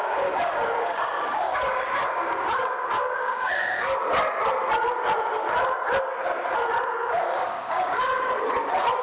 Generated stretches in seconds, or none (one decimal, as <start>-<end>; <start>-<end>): 0.0-4.0; 7.0-8.3